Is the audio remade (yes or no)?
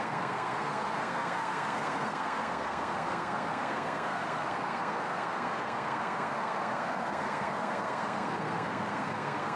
yes